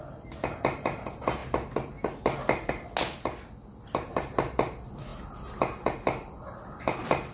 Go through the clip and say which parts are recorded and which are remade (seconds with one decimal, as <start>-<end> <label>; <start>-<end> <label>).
0.0-7.3 recorded